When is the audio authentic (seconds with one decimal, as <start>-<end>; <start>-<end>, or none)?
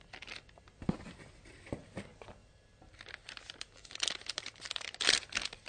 0.0-5.7